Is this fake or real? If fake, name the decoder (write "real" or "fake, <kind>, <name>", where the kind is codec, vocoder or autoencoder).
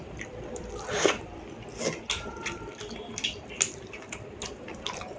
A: real